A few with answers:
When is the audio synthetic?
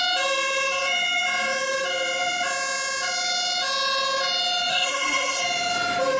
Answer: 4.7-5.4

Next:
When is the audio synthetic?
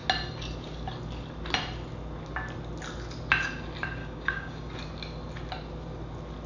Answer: 4.0-4.7